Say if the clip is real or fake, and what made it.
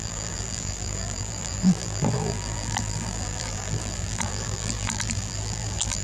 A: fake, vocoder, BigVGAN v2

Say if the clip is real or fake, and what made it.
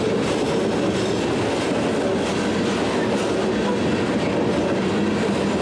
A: real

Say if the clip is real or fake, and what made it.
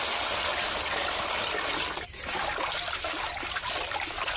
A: real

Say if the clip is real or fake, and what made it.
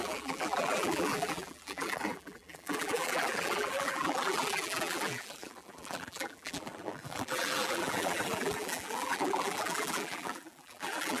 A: fake, vocoder, BigVGAN v2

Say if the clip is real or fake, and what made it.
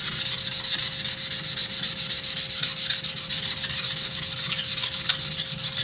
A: real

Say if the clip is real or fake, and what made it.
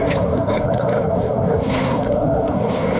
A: fake, codec, SNAC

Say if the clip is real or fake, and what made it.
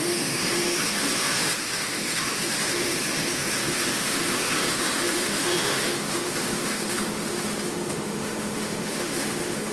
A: fake, autoencoder, DAC-VAE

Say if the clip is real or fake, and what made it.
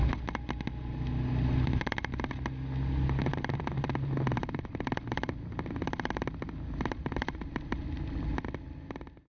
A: real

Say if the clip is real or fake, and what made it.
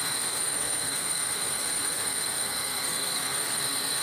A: fake, codec, SNAC